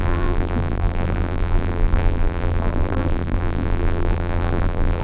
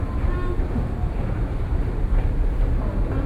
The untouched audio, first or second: second